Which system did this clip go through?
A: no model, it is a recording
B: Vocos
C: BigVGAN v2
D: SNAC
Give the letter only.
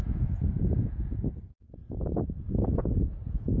B